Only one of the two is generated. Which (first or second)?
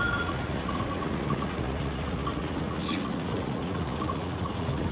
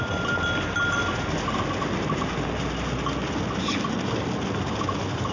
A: first